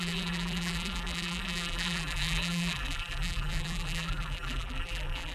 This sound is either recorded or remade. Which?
remade